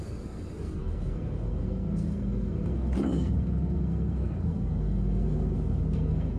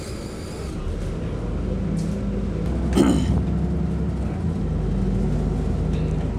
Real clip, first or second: second